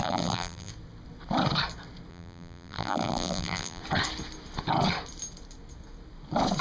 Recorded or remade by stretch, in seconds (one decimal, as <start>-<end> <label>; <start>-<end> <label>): 0.0-0.7 remade; 0.7-2.1 recorded; 2.1-3.8 remade; 3.8-6.6 recorded